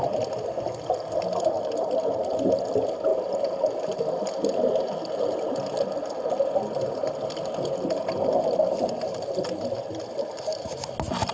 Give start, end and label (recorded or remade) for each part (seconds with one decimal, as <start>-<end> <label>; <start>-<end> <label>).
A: 0.0-11.3 recorded

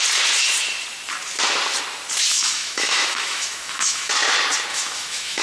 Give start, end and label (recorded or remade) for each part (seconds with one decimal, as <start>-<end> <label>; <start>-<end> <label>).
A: 0.0-2.3 recorded; 2.3-4.1 remade; 4.1-4.7 recorded; 4.7-5.4 remade

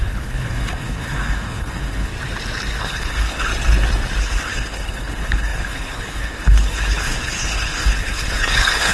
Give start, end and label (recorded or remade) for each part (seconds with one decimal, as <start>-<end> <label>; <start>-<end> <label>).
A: 0.0-2.1 remade; 2.1-2.8 recorded; 2.8-3.5 remade; 3.5-4.2 recorded; 4.2-8.9 remade

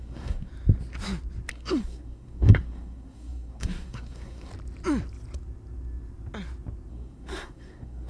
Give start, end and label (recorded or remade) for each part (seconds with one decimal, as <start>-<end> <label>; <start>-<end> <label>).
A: 0.0-0.5 remade; 0.5-1.5 recorded; 1.5-4.5 remade; 4.5-6.9 recorded; 6.9-8.1 remade

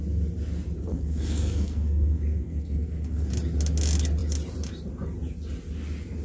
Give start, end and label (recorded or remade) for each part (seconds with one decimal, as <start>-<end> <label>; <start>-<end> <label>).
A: 0.0-0.9 recorded; 0.9-3.3 remade; 3.3-6.2 recorded

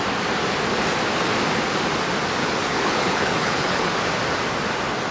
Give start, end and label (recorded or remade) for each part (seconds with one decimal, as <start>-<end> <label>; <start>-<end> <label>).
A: 0.0-2.4 recorded; 2.4-3.9 remade; 3.9-5.1 recorded